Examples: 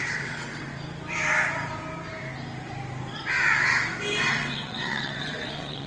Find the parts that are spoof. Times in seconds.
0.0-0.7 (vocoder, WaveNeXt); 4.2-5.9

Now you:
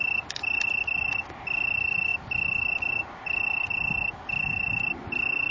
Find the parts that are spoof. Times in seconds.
none

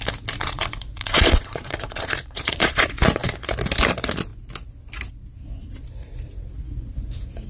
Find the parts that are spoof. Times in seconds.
0.4-3.3 (vocoder, Vocos)

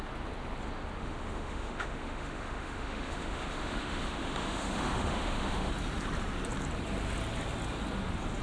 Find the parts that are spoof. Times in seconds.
1.0-5.7 (autoencoder, DAC-VAE)